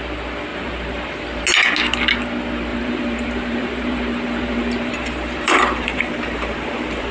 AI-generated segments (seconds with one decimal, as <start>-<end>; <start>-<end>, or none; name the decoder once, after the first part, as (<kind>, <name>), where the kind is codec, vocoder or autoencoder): 0.5-1.4 (vocoder, BigVGAN v2); 2.7-7.1